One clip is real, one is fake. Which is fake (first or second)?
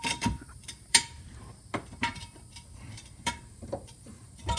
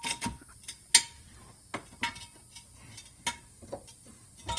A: first